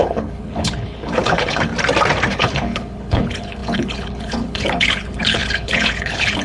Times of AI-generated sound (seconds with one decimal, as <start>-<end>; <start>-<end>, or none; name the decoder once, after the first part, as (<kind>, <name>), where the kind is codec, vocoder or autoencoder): 0.0-1.7 (codec, HILCodec); 2.3-6.4